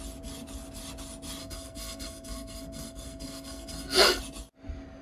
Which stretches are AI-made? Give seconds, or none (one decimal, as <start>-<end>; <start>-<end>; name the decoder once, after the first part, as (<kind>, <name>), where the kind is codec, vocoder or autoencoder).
1.4-4.2 (codec, SNAC)